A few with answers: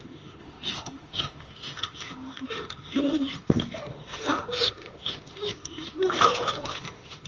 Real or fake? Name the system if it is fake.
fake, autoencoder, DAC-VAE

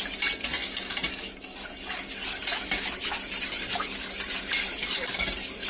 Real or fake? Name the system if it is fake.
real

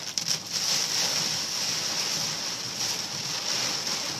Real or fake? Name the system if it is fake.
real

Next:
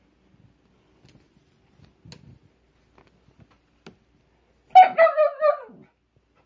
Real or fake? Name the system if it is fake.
real